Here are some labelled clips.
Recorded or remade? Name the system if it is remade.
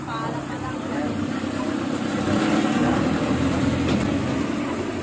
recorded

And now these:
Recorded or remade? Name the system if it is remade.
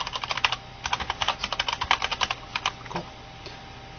recorded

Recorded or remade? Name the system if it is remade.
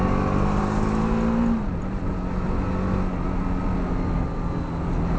recorded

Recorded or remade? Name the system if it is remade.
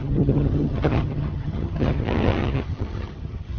remade, vocoder, HiFi-GAN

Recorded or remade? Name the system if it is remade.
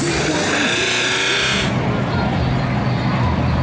recorded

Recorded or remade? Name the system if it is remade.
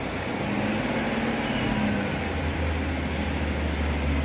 recorded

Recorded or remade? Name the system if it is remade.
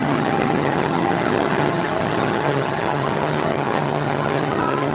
remade, vocoder, HiFi-GAN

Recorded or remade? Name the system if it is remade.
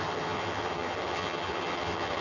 remade, vocoder, HiFi-GAN